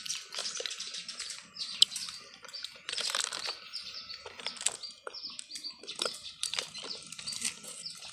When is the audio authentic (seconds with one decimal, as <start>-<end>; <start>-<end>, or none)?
0.0-0.4; 4.5-6.2; 7.1-8.1